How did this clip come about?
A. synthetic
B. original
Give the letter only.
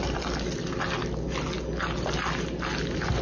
B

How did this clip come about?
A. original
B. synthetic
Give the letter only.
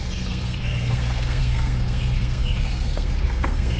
B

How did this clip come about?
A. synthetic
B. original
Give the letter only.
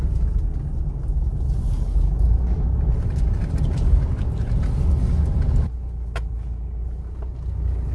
B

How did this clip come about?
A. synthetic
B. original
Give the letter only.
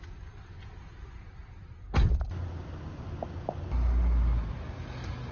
B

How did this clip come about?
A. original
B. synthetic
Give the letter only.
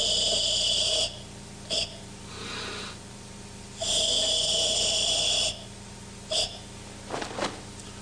A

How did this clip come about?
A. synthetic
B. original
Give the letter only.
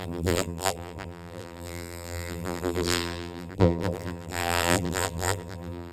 A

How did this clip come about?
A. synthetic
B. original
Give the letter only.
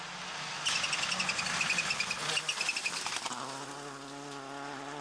B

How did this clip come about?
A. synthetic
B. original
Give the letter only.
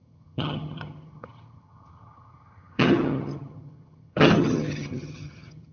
A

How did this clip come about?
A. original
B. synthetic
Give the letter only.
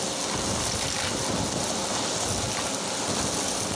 A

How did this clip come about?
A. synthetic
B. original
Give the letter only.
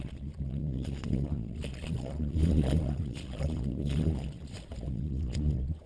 A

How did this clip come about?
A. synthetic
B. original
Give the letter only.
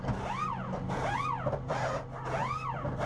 B